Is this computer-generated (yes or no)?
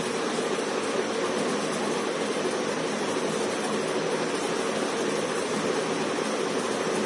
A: no